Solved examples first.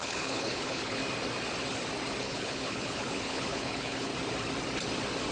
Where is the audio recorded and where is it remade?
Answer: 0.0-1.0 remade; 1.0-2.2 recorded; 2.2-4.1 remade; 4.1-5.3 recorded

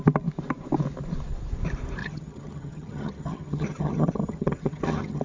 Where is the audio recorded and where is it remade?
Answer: 0.0-2.0 recorded; 2.0-5.2 remade

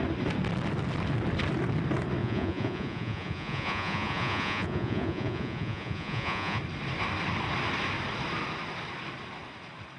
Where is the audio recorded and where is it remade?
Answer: 0.0-2.2 recorded; 2.2-6.6 remade; 6.6-10.0 recorded

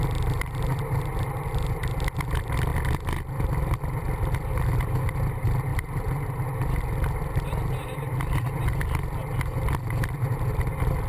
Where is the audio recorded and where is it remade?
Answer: 0.0-5.7 recorded; 5.7-6.8 remade; 6.8-11.1 recorded

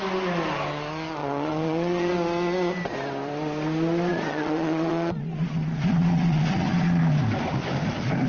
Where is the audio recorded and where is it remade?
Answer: 0.0-1.2 recorded; 1.2-2.1 remade; 2.1-4.1 recorded; 4.1-7.0 remade; 7.0-8.3 recorded

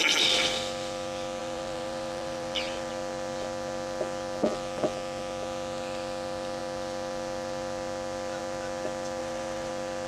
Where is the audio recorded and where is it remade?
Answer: 0.0-1.4 recorded; 1.4-2.9 remade; 2.9-9.2 recorded; 9.2-9.7 remade; 9.7-10.1 recorded